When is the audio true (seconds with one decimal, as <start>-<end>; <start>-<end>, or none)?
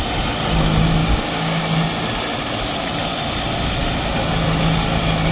0.0-1.0; 1.6-5.3